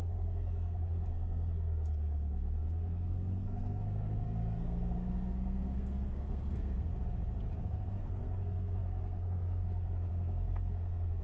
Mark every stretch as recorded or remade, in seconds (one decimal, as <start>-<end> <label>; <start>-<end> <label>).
0.0-6.9 remade; 6.9-7.6 recorded; 7.6-11.2 remade

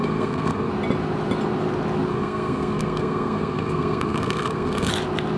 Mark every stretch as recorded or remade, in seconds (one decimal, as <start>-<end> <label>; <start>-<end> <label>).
0.0-0.7 remade; 0.7-2.1 recorded; 2.1-4.9 remade; 4.9-5.4 recorded

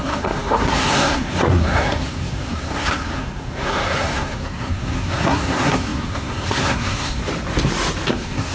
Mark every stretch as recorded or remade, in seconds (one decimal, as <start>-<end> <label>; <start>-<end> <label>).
0.0-7.2 remade; 7.2-8.1 recorded; 8.1-8.5 remade

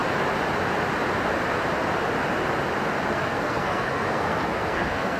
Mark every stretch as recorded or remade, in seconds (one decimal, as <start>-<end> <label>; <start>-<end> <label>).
0.0-3.1 recorded; 3.1-5.2 remade

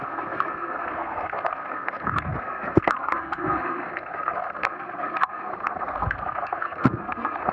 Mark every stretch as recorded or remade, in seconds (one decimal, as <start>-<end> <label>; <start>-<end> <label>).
0.0-7.5 remade